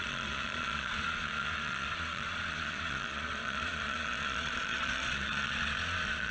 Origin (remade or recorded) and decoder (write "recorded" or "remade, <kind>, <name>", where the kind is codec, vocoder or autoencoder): remade, vocoder, Vocos